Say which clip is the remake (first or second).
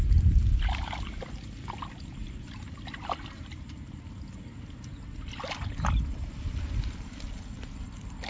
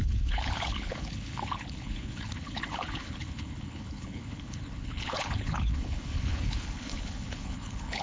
second